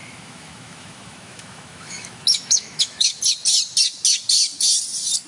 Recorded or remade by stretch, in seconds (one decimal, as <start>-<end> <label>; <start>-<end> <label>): 0.0-3.2 remade; 3.2-5.3 recorded